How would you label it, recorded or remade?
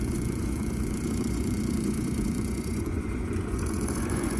remade